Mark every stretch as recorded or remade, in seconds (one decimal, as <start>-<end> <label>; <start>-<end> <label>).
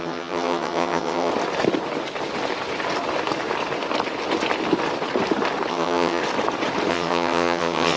0.0-1.3 remade; 1.3-5.7 recorded; 5.7-6.2 remade; 6.2-6.9 recorded; 6.9-8.0 remade